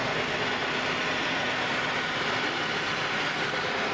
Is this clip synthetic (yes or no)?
no